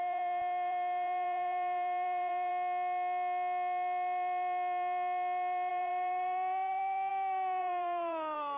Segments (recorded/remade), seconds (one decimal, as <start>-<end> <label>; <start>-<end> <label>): 0.0-2.5 remade; 2.5-5.7 recorded; 5.7-8.6 remade